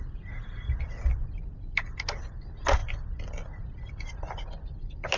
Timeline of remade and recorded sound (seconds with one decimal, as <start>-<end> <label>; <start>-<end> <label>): 0.0-2.8 recorded; 2.8-4.8 remade; 4.8-5.2 recorded